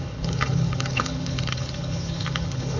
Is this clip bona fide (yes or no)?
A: no